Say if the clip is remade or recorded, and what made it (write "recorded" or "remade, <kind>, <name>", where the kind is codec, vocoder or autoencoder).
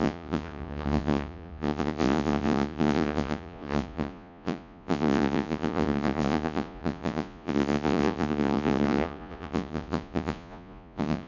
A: remade, vocoder, Vocos